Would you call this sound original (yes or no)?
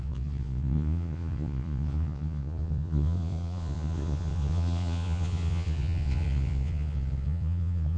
no